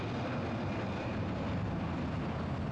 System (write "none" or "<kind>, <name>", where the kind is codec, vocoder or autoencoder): none